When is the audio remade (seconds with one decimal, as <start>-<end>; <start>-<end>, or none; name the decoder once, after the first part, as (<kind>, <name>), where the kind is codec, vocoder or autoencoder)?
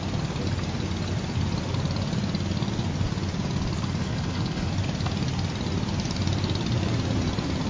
4.0-4.7 (codec, HILCodec)